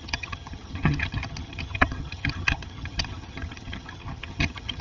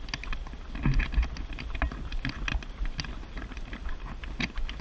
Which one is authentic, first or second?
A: second